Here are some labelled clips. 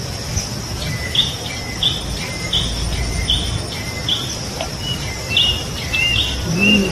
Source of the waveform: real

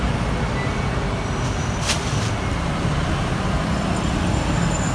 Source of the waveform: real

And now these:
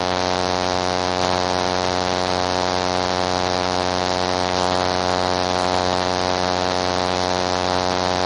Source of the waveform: real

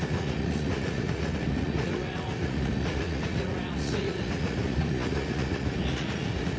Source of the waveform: fake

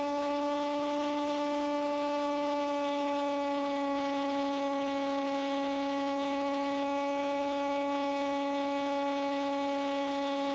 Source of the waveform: fake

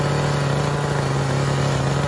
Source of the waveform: real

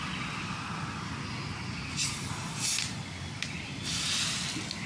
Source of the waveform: real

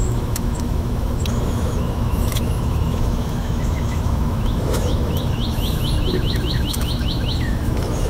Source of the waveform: fake